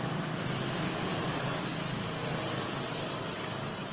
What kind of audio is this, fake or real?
real